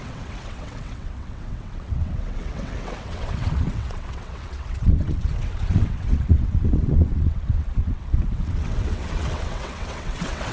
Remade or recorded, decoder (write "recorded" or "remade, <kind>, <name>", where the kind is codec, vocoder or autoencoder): remade, vocoder, WaveNeXt